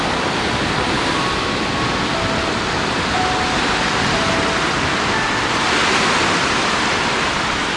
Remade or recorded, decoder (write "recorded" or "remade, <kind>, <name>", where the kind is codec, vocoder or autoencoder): recorded